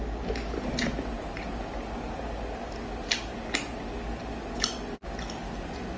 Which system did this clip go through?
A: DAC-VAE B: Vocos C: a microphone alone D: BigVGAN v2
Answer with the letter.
C